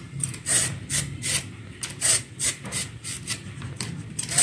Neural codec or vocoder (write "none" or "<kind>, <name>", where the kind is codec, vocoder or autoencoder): vocoder, BigVGAN v2